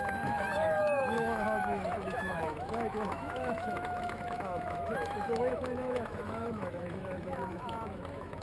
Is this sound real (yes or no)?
no